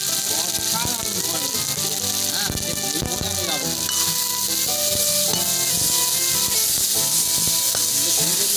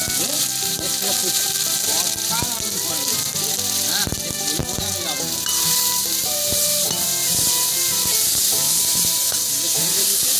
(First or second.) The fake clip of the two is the second